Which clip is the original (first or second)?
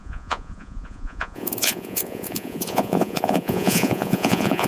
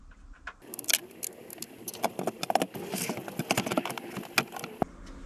second